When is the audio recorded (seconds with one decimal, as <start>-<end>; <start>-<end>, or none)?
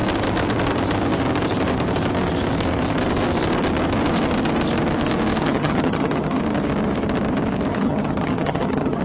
0.0-5.4; 6.4-7.7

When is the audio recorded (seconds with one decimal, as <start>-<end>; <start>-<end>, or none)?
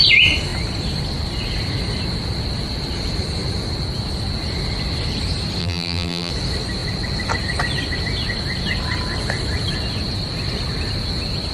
0.0-5.6; 6.3-11.5